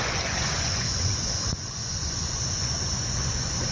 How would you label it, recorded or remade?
remade